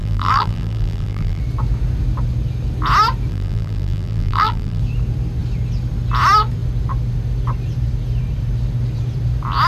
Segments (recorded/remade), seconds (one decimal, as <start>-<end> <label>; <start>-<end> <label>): 0.0-1.4 remade; 1.4-3.3 recorded; 3.3-4.8 remade; 4.8-9.7 recorded